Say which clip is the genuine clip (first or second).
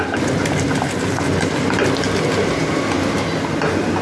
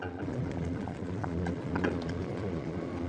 first